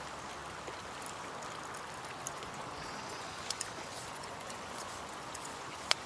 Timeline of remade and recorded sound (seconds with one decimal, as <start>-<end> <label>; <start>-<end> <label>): 0.0-2.3 recorded; 2.3-6.1 remade